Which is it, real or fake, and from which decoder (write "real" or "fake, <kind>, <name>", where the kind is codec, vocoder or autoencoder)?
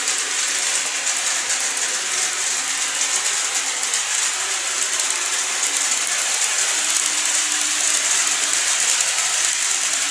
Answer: real